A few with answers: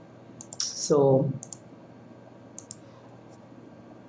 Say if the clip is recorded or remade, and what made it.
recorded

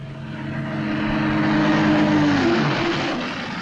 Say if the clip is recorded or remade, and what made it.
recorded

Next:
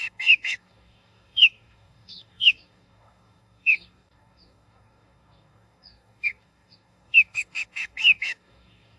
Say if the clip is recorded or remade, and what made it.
remade, codec, DAC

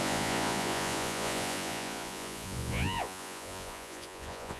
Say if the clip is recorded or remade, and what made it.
remade, vocoder, Vocos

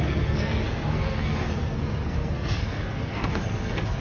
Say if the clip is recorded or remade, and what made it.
remade, codec, SNAC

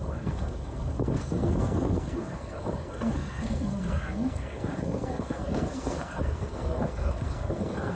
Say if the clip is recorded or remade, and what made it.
remade, codec, SNAC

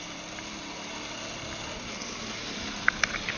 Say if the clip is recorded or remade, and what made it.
recorded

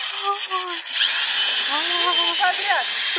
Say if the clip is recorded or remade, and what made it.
recorded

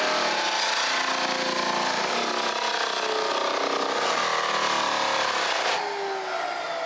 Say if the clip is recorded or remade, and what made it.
recorded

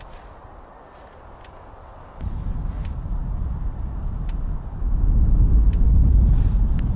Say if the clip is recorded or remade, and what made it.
recorded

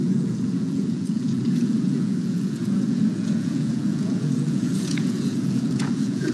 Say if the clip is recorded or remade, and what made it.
remade, vocoder, Vocos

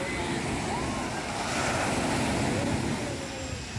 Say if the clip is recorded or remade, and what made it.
recorded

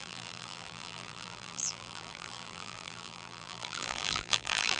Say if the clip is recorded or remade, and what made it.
remade, vocoder, BigVGAN v2